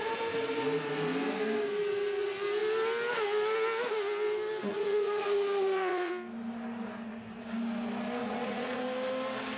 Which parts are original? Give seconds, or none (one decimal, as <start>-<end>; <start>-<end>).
0.0-4.7; 6.1-8.2; 8.8-9.6